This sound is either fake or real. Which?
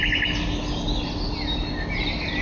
real